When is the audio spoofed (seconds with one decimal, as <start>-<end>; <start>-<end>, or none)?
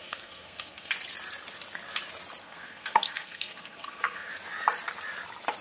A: 0.0-0.9; 2.4-4.3